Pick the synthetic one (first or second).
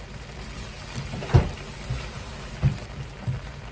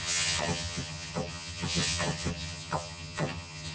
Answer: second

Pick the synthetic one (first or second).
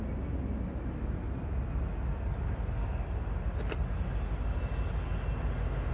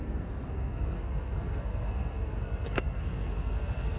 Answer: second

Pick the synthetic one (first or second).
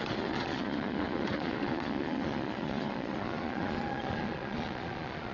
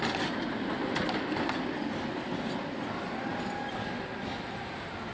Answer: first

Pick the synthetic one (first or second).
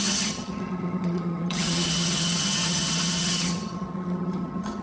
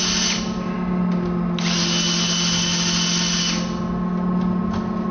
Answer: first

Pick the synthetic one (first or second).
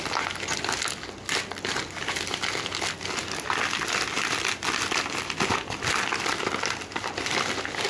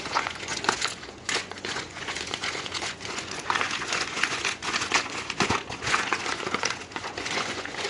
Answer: second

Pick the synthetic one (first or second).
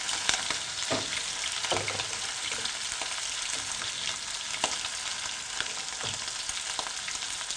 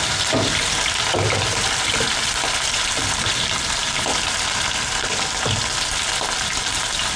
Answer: second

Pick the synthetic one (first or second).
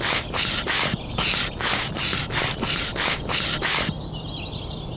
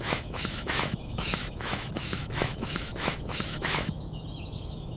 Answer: second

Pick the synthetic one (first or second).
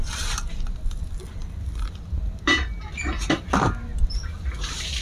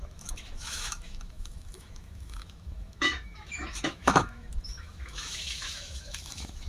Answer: second